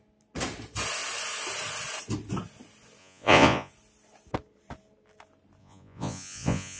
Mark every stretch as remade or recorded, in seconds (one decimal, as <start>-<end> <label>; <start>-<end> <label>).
0.0-3.0 recorded; 3.0-3.7 remade; 3.7-5.6 recorded; 5.6-6.8 remade